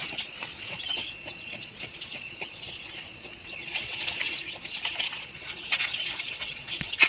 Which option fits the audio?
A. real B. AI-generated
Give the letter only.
B